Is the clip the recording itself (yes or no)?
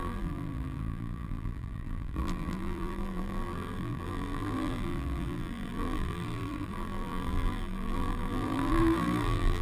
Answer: no